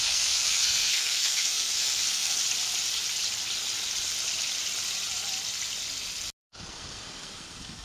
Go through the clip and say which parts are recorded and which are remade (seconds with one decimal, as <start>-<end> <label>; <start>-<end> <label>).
0.0-2.4 remade; 2.4-6.4 recorded; 6.4-7.8 remade